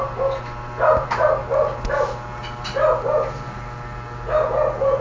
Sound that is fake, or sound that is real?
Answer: real